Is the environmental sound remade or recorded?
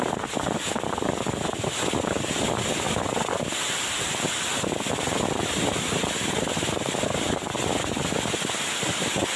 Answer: recorded